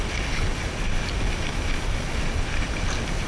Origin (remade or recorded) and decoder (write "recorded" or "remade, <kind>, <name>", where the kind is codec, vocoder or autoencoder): recorded